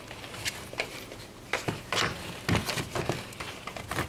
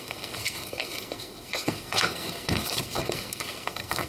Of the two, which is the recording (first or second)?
first